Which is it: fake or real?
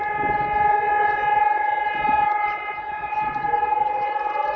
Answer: real